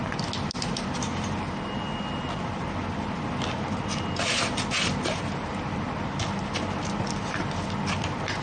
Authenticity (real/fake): real